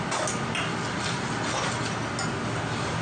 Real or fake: real